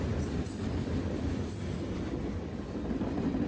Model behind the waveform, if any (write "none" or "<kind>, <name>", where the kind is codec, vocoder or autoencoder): none